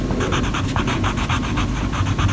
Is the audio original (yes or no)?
yes